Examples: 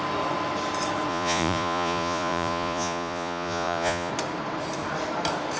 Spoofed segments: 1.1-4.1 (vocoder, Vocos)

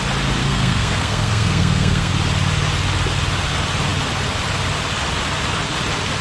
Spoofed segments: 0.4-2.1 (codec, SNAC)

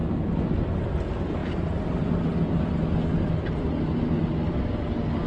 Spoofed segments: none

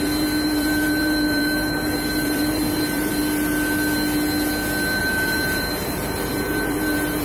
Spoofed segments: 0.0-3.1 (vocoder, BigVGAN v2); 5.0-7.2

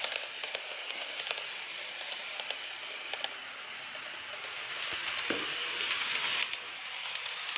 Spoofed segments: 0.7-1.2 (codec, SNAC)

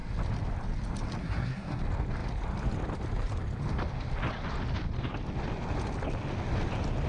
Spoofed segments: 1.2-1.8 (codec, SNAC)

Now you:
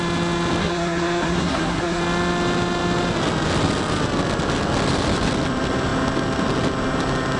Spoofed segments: 0.6-2.0 (codec, SNAC)